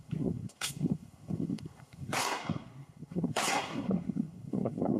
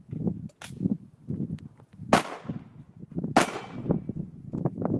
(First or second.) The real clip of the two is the second